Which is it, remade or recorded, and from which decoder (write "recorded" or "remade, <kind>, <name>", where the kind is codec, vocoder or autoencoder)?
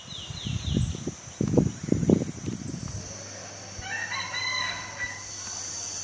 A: recorded